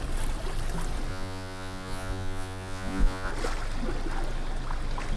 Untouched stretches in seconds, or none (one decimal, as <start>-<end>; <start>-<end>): 0.0-1.1; 3.3-5.2